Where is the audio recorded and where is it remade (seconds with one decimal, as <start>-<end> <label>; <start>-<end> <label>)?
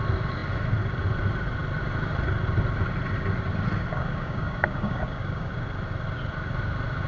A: 0.0-3.9 recorded; 3.9-5.5 remade; 5.5-7.1 recorded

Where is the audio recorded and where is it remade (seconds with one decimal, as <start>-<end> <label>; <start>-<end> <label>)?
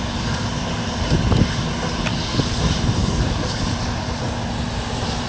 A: 0.0-2.1 recorded; 2.1-2.6 remade; 2.6-3.0 recorded; 3.0-3.6 remade; 3.6-5.3 recorded